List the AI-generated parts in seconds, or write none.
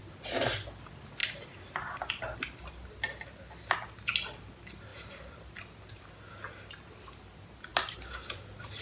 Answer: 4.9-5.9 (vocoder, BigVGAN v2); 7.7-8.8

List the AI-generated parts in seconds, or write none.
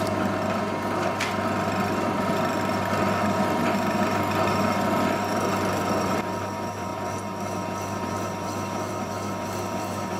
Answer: none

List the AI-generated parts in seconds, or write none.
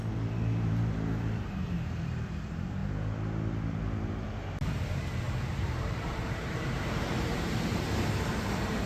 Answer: 0.0-2.8 (vocoder, BigVGAN v2); 5.1-8.9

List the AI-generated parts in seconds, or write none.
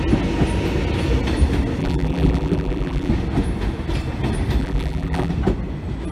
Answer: 1.8-3.1 (vocoder, BigVGAN v2); 4.6-5.3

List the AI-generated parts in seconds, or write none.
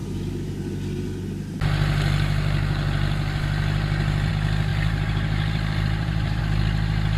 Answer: 4.7-6.4 (vocoder, BigVGAN v2)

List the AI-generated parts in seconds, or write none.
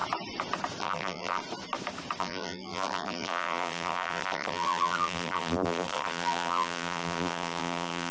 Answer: 0.8-1.4 (vocoder, BigVGAN v2); 2.2-8.1